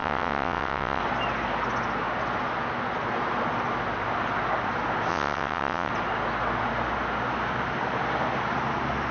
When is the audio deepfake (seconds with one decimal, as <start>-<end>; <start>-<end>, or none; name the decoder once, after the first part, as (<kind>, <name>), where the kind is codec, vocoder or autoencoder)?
0.0-1.0 (vocoder, WaveNeXt); 5.1-5.9